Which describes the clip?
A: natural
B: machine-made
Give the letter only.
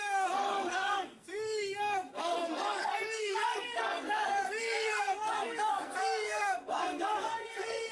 B